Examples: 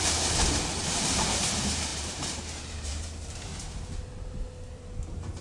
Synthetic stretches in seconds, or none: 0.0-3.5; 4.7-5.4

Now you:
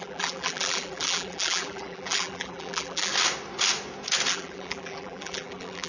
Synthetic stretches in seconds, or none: 0.0-3.1; 4.3-5.9

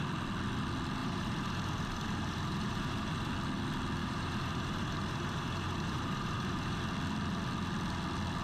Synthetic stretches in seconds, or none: 1.0-3.3; 4.0-6.8

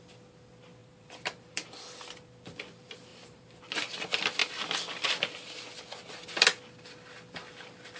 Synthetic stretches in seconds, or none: 0.8-1.8; 3.1-3.6

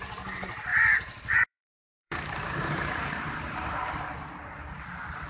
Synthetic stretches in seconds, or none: 0.7-3.9